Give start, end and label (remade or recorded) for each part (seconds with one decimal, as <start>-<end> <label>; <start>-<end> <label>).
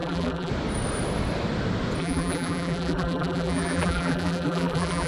0.0-0.5 remade; 0.5-2.0 recorded; 2.0-5.1 remade